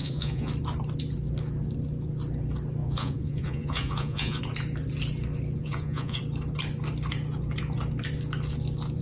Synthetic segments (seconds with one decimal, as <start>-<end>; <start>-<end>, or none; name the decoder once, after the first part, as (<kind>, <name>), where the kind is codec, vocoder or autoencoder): 0.0-0.5 (vocoder, Vocos); 2.8-4.4; 5.6-6.2

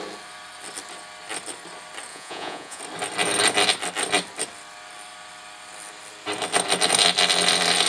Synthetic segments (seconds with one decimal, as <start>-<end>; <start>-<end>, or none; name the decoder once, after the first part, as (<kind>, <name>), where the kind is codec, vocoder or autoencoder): 2.1-2.8 (vocoder, Vocos)